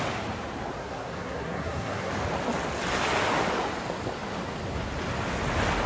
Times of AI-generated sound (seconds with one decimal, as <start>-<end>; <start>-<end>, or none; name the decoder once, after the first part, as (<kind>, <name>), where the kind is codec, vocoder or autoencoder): 0.8-2.1 (codec, SNAC)